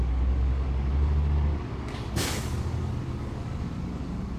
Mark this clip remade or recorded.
remade